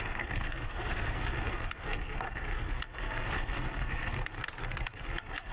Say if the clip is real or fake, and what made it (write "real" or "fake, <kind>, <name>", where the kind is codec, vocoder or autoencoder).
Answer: fake, codec, SNAC